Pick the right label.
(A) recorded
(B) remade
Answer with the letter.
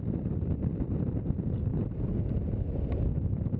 A